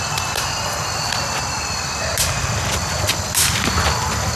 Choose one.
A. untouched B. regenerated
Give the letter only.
A